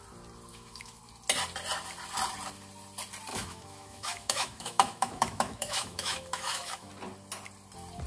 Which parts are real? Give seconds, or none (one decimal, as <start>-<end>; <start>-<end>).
0.0-0.5; 1.0-3.3; 6.9-8.1